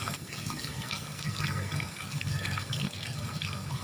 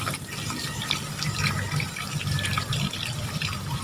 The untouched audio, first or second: second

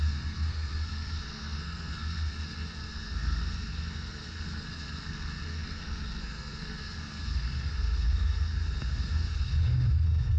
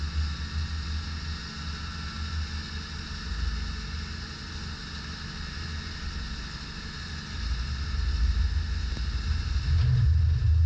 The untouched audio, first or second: second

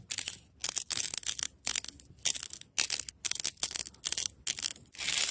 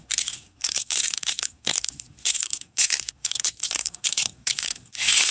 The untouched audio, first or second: first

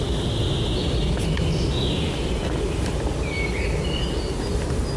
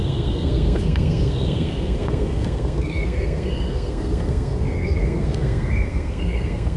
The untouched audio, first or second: first